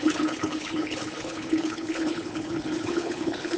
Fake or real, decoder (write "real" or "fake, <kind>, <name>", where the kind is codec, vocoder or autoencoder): fake, codec, HILCodec